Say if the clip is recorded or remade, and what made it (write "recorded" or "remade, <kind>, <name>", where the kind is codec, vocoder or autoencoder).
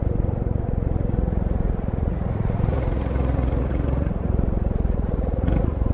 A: remade, vocoder, Vocos